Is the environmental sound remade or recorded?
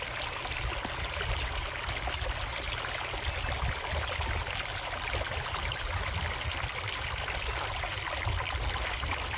recorded